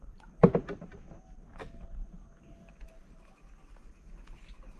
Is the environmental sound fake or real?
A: real